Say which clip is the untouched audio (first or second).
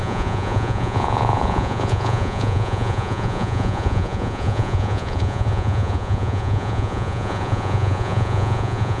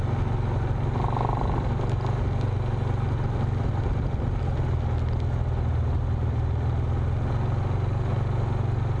second